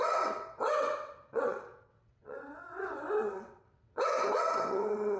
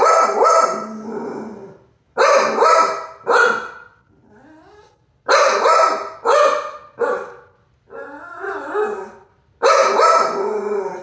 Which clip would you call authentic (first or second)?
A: second